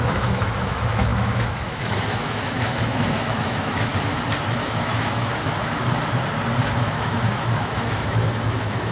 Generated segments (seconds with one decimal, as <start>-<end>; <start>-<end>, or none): 0.0-3.9; 4.5-5.8; 6.6-8.9

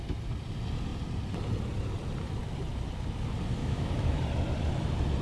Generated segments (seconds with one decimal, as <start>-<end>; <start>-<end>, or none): 3.6-4.2

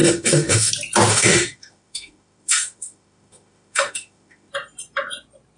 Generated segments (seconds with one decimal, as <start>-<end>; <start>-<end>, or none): 0.0-0.7; 1.1-4.5

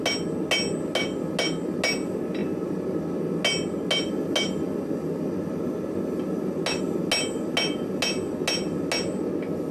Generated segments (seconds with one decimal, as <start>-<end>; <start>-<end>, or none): none

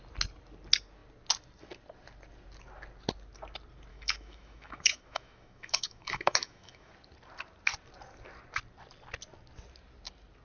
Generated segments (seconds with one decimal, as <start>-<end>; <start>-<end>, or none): 3.9-6.9

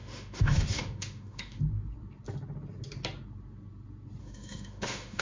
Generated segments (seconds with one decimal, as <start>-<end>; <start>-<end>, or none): 0.0-1.6; 4.2-5.2